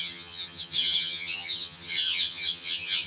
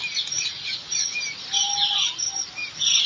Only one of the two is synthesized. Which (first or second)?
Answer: first